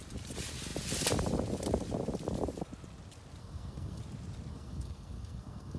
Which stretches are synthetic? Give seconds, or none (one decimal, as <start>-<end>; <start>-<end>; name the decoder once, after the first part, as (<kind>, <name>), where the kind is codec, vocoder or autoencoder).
3.4-4.0 (codec, SNAC); 4.5-5.8